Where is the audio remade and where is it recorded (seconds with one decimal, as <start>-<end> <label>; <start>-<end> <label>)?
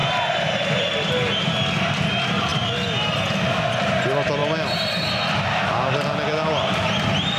0.0-7.4 recorded